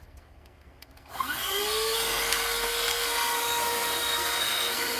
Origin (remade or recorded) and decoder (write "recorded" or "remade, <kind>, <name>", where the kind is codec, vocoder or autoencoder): remade, codec, SNAC